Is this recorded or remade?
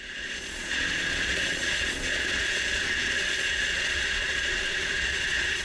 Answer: remade